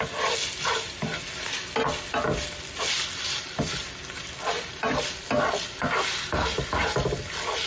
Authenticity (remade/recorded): recorded